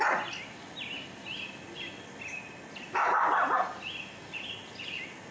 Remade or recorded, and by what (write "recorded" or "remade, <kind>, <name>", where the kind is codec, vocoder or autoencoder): recorded